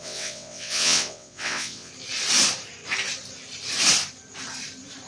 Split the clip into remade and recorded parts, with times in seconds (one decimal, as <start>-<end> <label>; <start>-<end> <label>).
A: 0.0-1.9 remade; 1.9-5.1 recorded